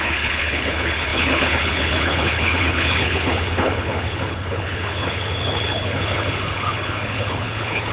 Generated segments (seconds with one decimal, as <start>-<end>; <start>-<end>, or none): 0.0-7.9